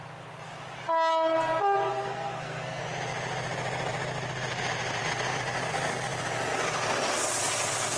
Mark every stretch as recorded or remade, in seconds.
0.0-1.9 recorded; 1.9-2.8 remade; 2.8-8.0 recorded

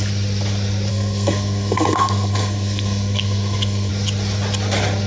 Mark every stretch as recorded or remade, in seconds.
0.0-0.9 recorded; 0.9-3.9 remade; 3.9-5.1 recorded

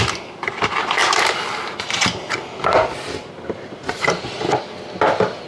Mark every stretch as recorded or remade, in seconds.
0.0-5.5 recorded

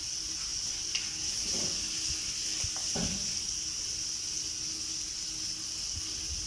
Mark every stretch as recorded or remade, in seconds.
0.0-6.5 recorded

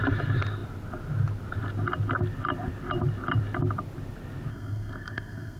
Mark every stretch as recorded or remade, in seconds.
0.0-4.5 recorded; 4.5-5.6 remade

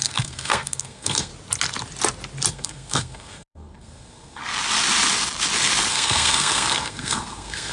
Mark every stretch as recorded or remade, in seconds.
0.0-1.3 remade; 1.3-2.5 recorded; 2.5-4.4 remade; 4.4-5.9 recorded; 5.9-7.7 remade

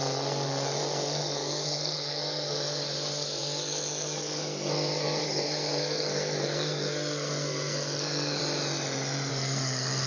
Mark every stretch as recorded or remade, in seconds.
0.0-8.4 remade; 8.4-9.3 recorded; 9.3-10.1 remade

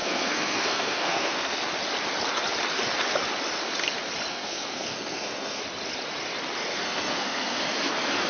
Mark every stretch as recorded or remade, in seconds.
0.0-1.6 remade; 1.6-4.3 recorded; 4.3-5.6 remade; 5.6-6.7 recorded; 6.7-7.6 remade; 7.6-8.3 recorded